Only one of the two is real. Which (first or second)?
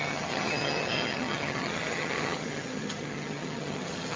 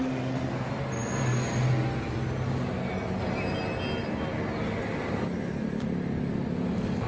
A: second